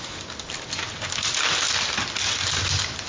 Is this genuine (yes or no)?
yes